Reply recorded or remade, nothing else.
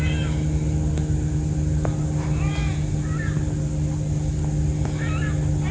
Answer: recorded